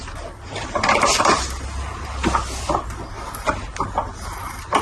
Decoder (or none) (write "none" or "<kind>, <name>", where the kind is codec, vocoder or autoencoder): none